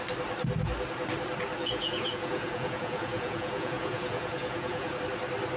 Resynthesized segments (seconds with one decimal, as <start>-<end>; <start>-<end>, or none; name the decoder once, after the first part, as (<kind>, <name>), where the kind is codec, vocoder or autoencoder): 1.6-5.0 (vocoder, Vocos)